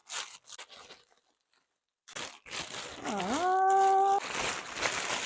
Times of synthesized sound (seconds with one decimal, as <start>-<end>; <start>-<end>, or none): none

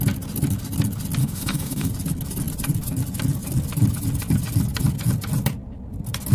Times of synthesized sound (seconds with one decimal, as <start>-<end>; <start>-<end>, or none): 1.2-1.9

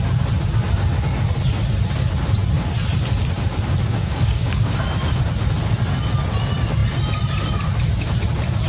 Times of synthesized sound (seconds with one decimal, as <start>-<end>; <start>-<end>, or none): 3.9-4.7